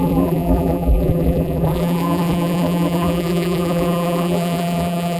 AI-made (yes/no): yes